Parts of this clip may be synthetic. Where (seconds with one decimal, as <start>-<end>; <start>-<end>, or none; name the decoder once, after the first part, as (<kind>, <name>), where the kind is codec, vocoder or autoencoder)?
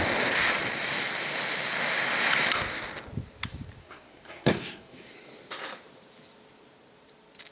3.8-5.1 (codec, SNAC)